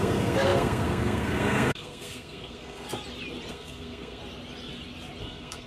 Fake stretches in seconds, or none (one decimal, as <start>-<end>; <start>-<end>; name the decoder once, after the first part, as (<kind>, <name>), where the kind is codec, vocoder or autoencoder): 0.0-2.9 (codec, SNAC); 3.5-4.2; 5.2-5.7